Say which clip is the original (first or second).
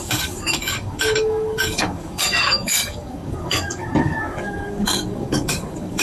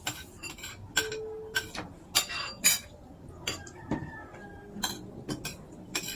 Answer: second